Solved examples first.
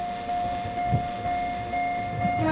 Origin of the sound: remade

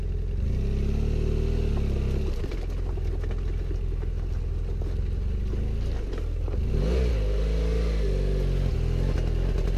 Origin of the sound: recorded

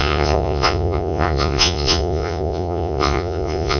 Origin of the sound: remade